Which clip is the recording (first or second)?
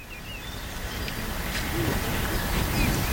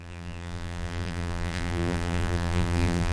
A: first